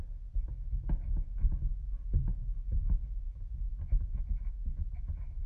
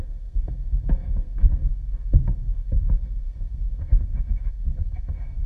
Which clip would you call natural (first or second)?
first